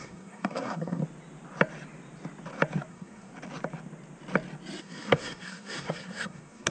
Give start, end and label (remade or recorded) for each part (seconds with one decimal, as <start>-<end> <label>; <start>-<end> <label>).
0.0-1.0 remade; 1.0-2.9 recorded; 2.9-3.3 remade; 3.3-4.8 recorded; 4.8-6.7 remade